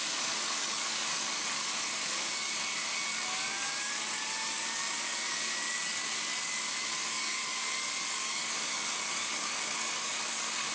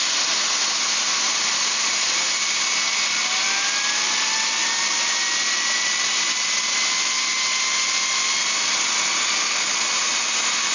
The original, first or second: second